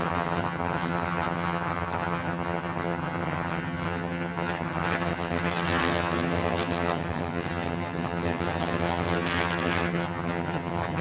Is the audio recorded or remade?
remade